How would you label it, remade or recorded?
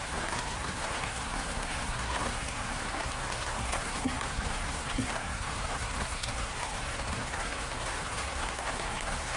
remade